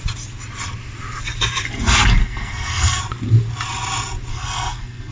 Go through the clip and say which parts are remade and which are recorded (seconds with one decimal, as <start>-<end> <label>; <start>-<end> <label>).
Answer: 0.0-2.2 recorded; 2.2-3.0 remade; 3.0-4.3 recorded; 4.3-5.1 remade